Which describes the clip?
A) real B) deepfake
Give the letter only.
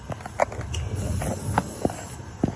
A